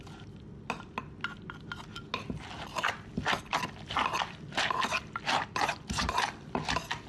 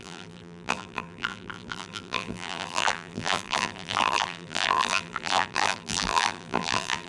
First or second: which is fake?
second